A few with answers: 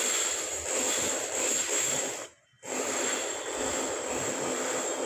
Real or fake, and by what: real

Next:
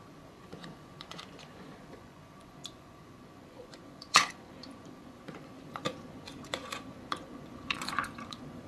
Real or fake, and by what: fake, vocoder, Vocos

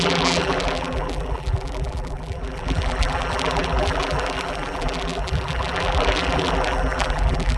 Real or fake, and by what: fake, vocoder, BigVGAN v2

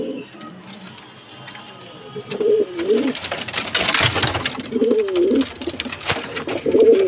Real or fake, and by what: real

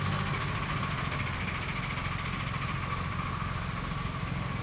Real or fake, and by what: real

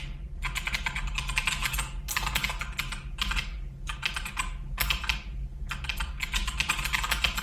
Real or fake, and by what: real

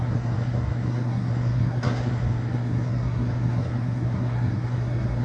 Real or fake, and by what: fake, codec, SNAC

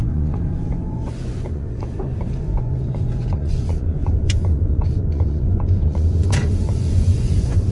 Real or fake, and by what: fake, vocoder, Vocos